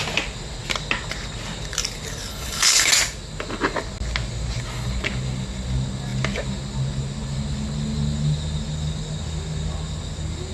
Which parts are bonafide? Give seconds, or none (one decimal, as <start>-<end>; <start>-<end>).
0.0-2.3; 2.9-10.5